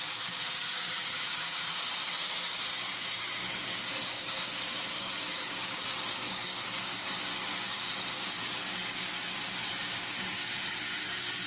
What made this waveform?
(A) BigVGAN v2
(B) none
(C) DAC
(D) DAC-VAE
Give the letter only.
C